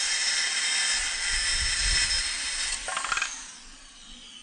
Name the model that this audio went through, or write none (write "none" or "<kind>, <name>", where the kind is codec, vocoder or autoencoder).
none